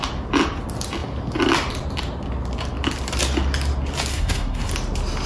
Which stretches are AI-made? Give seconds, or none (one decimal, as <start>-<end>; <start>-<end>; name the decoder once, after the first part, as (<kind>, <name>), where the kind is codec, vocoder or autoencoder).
4.1-4.7 (codec, SNAC)